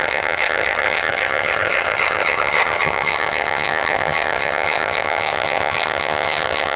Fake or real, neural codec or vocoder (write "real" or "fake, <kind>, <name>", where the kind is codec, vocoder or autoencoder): fake, vocoder, HiFi-GAN